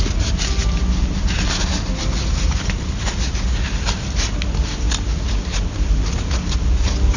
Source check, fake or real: real